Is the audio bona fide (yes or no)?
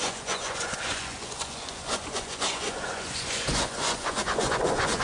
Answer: no